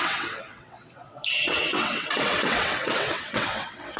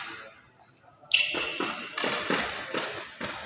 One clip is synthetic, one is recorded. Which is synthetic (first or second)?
first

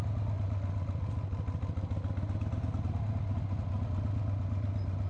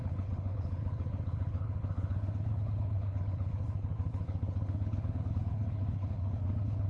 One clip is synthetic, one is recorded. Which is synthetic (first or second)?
second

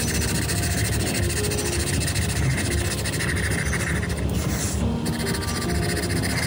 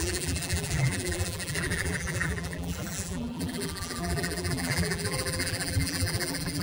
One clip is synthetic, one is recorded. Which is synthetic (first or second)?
second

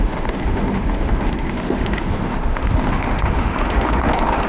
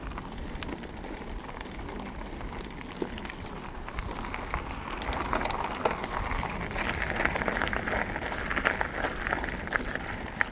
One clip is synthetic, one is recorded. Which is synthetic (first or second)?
first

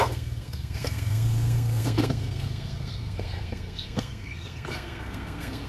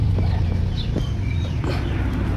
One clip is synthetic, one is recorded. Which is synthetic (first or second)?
first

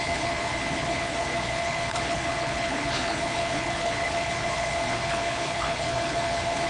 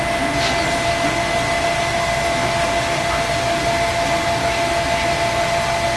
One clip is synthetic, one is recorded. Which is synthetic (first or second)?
first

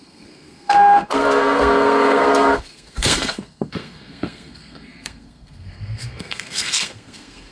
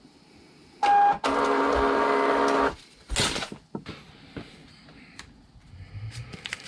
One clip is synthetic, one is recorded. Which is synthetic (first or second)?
first